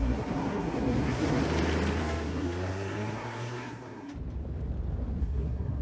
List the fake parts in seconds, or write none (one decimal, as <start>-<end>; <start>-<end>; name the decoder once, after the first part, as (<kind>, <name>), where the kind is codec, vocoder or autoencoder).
0.0-1.4 (codec, SNAC); 2.0-4.1; 5.2-5.8